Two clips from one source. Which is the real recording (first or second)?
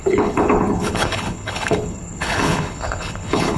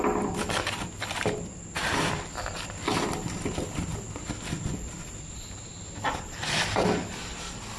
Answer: second